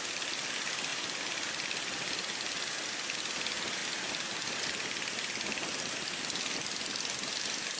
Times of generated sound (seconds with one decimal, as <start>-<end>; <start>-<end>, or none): none